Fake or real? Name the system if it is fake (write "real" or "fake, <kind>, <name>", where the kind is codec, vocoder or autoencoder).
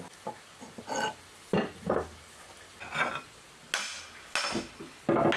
real